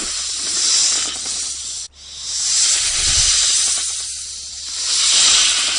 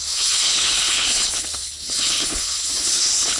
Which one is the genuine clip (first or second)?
first